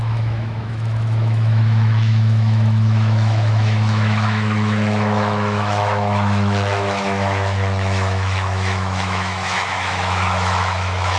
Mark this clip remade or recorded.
remade